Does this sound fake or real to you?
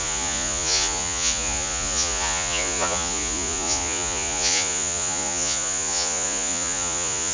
fake